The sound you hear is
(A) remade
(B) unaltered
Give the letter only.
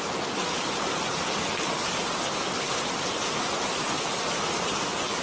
B